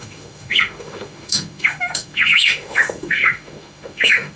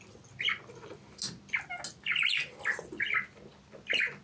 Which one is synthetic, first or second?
first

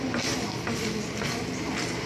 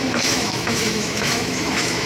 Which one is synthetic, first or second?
second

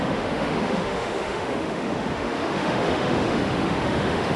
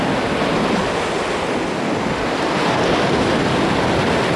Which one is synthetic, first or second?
first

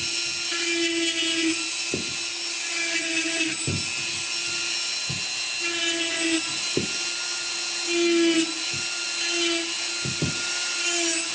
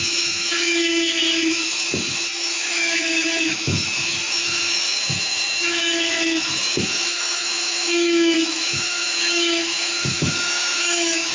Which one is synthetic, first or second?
second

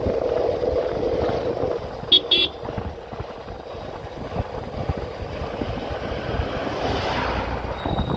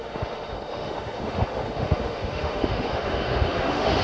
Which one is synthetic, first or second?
second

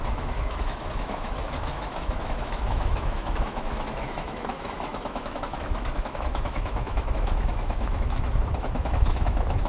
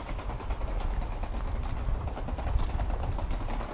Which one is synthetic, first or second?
first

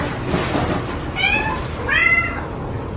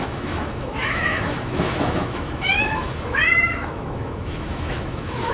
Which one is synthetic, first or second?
second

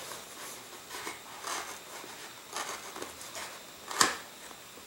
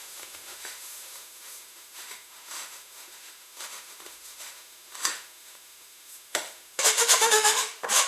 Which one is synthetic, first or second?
second